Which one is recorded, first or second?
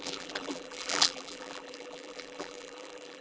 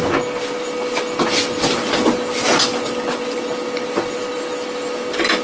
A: second